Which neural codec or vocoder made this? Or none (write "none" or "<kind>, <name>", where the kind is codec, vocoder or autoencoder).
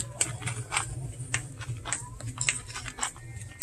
none